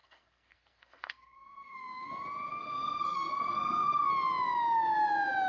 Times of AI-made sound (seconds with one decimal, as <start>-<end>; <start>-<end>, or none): 0.0-2.1; 2.5-4.1